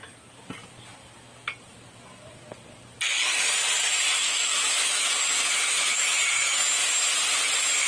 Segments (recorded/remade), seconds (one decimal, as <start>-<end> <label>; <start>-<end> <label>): 0.0-4.2 recorded; 4.2-6.2 remade; 6.2-7.9 recorded